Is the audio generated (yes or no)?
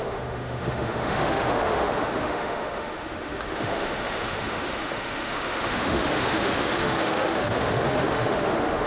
yes